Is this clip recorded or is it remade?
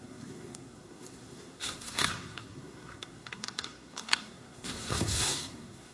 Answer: remade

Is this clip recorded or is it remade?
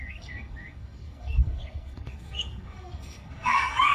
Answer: remade